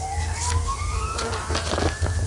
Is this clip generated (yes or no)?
no